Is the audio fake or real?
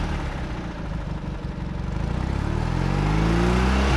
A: real